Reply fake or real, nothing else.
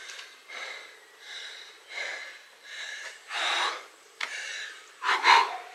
fake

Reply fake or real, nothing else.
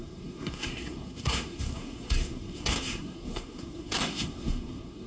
fake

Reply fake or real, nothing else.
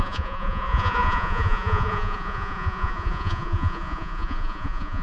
fake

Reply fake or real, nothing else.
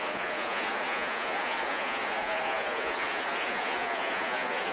fake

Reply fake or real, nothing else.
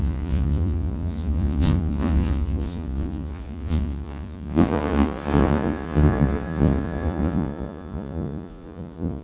fake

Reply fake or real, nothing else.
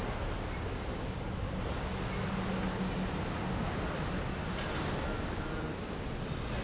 real